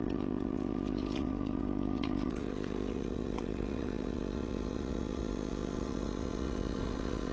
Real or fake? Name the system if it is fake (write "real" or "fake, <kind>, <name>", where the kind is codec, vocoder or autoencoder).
fake, vocoder, WaveNeXt